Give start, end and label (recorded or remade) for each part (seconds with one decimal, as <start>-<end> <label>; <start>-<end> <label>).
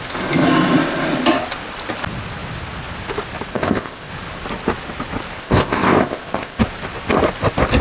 0.0-3.5 recorded; 3.5-4.1 remade; 4.1-5.4 recorded; 5.4-6.6 remade; 6.6-7.8 recorded